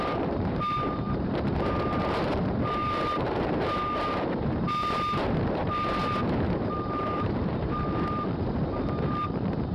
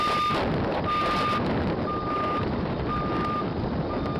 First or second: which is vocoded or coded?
first